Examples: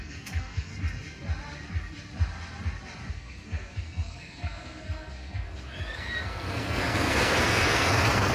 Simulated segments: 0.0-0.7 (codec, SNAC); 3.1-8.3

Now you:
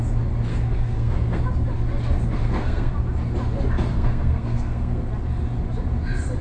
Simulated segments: 0.5-1.4 (codec, SNAC); 2.4-2.9; 3.9-5.1

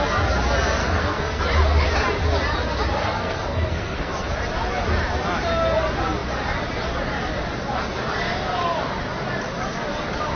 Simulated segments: 0.8-1.4 (codec, SNAC); 3.0-4.3

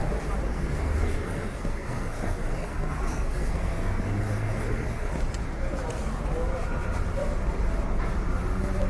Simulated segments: 0.5-5.1 (codec, SNAC)

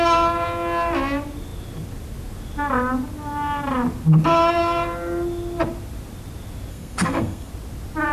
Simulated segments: 6.7-7.5 (codec, SNAC)

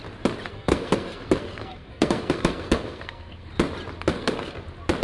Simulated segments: 0.5-3.5 (codec, SNAC); 4.1-4.6

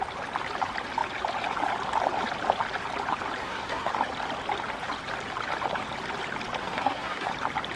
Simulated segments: 3.4-3.9 (codec, SNAC); 6.6-7.3